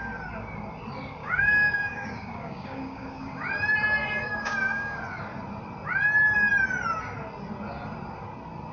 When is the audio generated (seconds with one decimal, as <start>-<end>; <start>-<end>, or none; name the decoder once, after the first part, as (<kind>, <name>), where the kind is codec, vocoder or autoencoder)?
1.2-3.5 (codec, DAC); 4.0-5.0